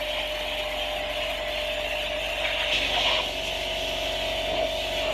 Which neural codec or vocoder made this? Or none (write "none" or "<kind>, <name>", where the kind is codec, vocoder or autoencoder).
none